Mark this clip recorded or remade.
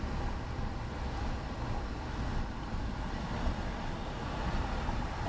recorded